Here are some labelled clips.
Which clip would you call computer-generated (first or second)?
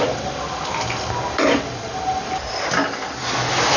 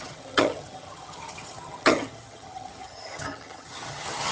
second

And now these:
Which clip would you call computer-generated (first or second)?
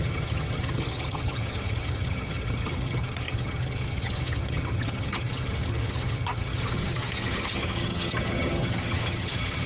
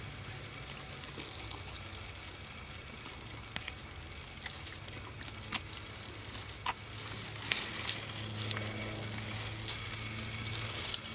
first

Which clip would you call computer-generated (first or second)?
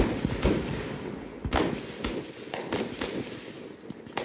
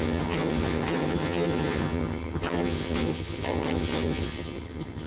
second